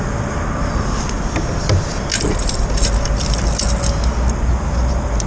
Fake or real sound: real